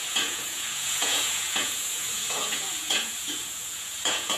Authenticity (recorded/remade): remade